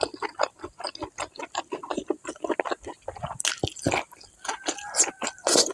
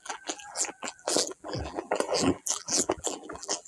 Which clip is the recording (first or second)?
first